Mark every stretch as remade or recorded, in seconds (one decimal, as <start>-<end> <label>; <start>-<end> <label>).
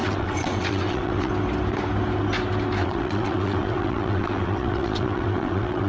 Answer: 0.0-1.3 remade; 1.3-2.8 recorded; 2.8-5.9 remade